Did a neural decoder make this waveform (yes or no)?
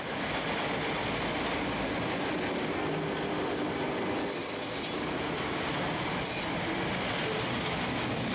no